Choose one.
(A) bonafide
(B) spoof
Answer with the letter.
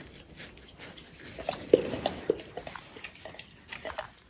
A